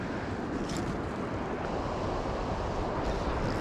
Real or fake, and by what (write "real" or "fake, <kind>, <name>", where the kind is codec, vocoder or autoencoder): real